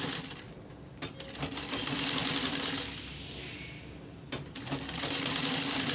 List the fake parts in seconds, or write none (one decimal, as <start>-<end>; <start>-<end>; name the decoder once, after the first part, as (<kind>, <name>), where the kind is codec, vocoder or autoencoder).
none